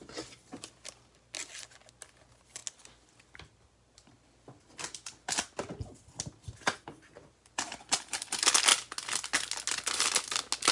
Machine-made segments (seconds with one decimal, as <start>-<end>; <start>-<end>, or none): none